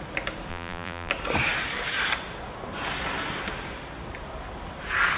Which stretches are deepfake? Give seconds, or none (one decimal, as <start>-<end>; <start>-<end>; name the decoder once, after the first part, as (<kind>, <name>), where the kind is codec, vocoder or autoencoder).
0.5-1.1 (vocoder, BigVGAN v2)